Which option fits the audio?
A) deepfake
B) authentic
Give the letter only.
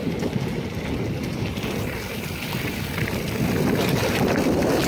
B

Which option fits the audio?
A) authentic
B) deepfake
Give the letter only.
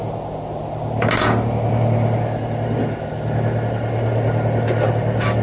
A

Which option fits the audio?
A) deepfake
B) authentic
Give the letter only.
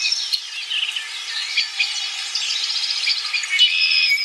B